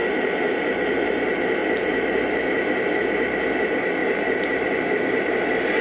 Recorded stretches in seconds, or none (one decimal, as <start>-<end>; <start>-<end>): 1.1-1.6; 2.4-4.0; 5.3-5.8